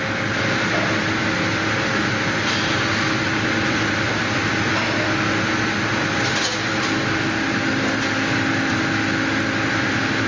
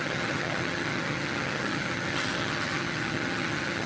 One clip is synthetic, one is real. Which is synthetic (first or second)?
second